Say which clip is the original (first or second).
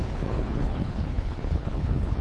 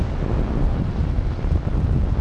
second